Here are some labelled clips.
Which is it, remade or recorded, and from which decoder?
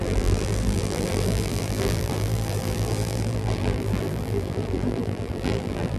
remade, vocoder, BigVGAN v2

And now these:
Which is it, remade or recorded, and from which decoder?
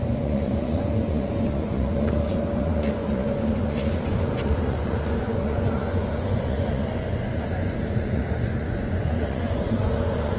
remade, vocoder, Vocos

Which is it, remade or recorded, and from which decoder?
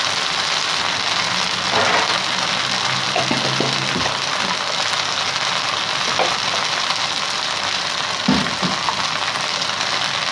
recorded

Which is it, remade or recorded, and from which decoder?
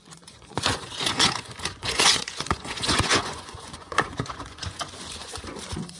remade, vocoder, Vocos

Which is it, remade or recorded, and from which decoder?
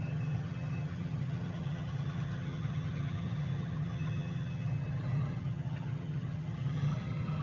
remade, vocoder, HiFi-GAN